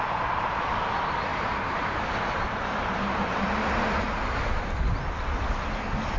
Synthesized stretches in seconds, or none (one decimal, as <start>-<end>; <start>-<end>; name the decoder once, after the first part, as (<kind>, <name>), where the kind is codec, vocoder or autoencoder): 1.3-4.6 (vocoder, BigVGAN v2)